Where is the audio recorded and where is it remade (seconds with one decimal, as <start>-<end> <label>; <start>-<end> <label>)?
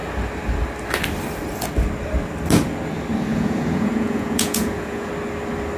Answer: 0.0-3.3 recorded; 3.3-5.1 remade; 5.1-5.8 recorded